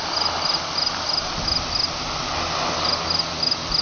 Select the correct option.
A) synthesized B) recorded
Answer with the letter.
B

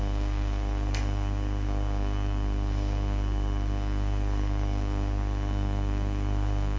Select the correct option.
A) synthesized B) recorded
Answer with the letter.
A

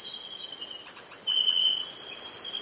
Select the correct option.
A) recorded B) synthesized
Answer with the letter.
B